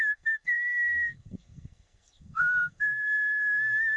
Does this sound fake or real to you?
fake